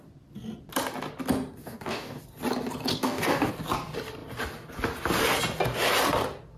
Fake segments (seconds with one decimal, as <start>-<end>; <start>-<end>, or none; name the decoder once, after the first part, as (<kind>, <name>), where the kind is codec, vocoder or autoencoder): 1.6-2.2 (codec, DAC); 2.9-3.5